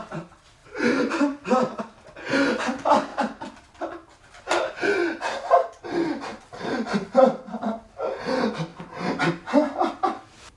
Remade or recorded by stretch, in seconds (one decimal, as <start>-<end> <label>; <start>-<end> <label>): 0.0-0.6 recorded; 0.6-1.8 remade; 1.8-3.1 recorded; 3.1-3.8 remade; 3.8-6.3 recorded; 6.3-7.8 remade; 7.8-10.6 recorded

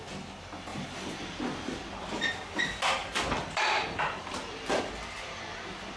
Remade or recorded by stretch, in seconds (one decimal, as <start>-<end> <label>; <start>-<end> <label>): 0.0-0.7 recorded; 0.7-2.3 remade; 2.3-3.0 recorded; 3.0-4.8 remade; 4.8-6.0 recorded

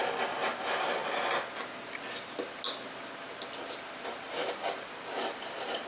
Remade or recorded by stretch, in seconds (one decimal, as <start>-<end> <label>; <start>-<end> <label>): 0.0-0.6 recorded; 0.6-1.0 remade; 1.0-4.5 recorded; 4.5-5.9 remade

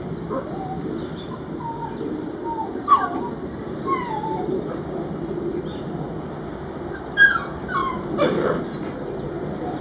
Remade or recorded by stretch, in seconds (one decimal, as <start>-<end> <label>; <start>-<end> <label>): 0.0-7.8 recorded; 7.8-8.6 remade; 8.6-9.8 recorded